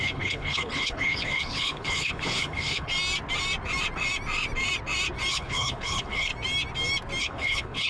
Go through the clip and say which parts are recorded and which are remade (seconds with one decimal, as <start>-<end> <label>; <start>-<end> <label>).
0.0-2.9 remade; 2.9-5.3 recorded; 5.3-6.3 remade; 6.3-7.2 recorded; 7.2-7.9 remade